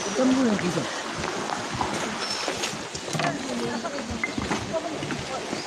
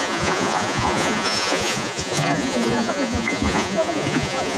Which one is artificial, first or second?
second